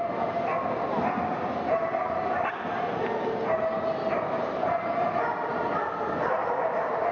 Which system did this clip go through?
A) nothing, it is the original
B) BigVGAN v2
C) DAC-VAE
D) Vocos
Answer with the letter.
A